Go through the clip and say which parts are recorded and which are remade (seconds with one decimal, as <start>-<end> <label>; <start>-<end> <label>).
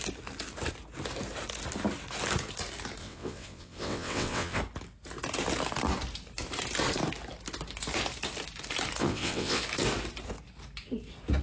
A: 0.0-3.0 recorded; 3.0-4.6 remade; 4.6-9.0 recorded; 9.0-9.6 remade; 9.6-11.4 recorded